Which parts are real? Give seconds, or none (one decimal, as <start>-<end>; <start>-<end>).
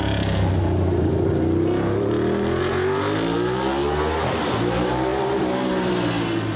0.0-6.6